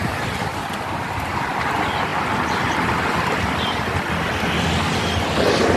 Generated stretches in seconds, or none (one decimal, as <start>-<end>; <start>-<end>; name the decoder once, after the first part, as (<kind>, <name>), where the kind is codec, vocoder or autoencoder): none